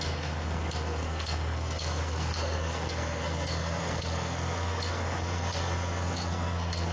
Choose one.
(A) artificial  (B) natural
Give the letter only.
A